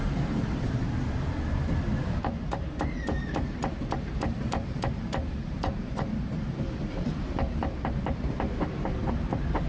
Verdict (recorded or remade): remade